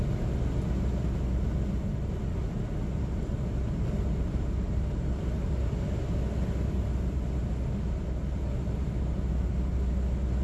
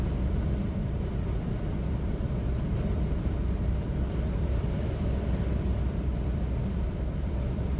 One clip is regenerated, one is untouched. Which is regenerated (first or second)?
second